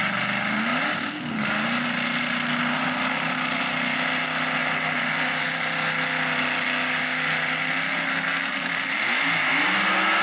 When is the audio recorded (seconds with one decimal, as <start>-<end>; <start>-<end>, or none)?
0.0-8.1; 8.9-10.2